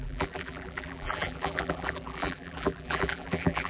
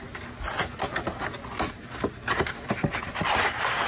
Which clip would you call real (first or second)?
second